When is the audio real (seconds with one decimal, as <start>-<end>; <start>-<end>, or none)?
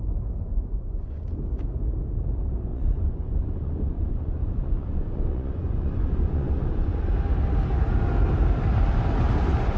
0.0-0.5; 1.3-2.7; 7.1-9.8